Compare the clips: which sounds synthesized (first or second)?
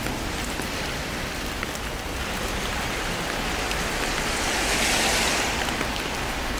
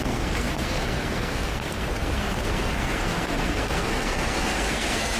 second